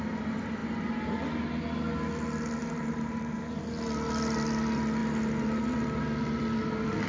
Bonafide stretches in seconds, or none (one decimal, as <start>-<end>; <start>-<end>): 0.0-2.6; 3.6-7.1

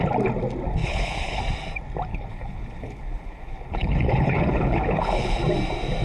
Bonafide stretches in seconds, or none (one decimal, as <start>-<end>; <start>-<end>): 0.0-0.8; 1.4-2.1; 5.4-6.0

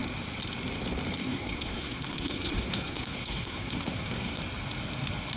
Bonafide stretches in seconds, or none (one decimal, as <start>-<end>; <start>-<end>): 0.0-1.2; 4.4-5.4

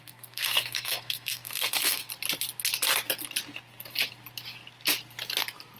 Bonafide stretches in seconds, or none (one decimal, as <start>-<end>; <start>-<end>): 2.1-5.8